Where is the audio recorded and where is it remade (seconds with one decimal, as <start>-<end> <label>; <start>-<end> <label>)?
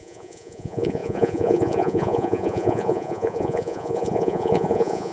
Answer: 0.0-5.1 remade